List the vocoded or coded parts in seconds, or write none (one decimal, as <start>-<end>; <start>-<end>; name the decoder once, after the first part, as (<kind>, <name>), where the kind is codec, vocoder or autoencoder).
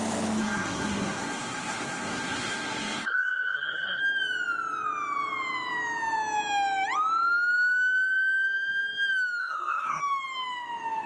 0.4-4.0 (codec, SNAC); 9.4-10.0